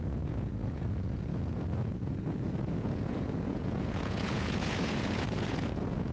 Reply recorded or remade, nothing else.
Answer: remade